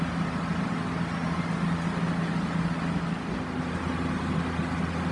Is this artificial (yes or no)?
no